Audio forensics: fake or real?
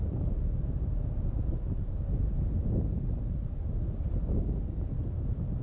real